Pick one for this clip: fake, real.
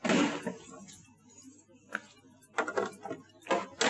real